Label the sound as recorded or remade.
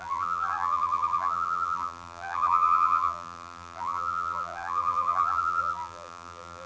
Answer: remade